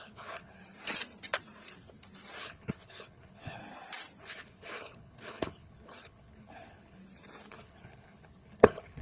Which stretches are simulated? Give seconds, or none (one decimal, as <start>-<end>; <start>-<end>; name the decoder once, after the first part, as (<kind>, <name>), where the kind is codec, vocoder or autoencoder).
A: 0.0-0.6 (codec, HILCodec); 2.4-3.6; 4.2-7.0; 7.5-9.0